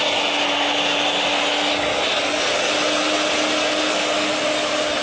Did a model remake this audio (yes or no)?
no